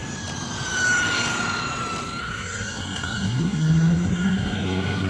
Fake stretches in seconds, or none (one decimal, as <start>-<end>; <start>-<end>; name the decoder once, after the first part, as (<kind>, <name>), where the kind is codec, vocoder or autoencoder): 2.2-5.1 (codec, SNAC)